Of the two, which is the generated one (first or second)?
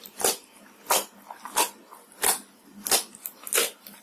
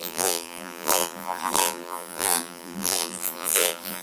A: second